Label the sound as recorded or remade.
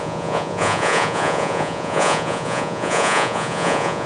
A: remade